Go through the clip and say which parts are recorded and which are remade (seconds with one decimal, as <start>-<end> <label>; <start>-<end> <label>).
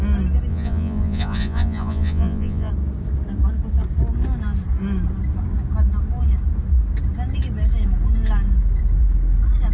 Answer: 0.0-0.5 recorded; 0.5-2.7 remade; 2.7-9.7 recorded